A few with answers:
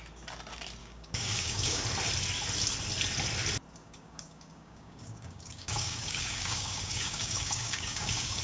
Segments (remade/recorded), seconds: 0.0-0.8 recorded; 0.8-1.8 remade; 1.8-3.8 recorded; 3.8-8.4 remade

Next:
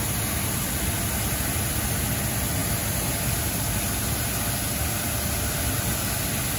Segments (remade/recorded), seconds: 0.0-6.6 recorded

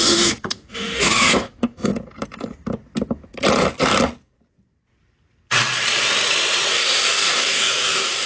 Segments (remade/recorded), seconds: 0.0-1.9 remade; 1.9-6.7 recorded; 6.7-8.3 remade